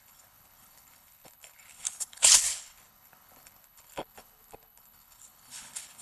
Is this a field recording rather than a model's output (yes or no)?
no